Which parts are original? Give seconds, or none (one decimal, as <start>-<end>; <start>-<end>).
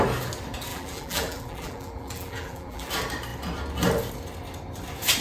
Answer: 0.0-0.7; 2.9-5.2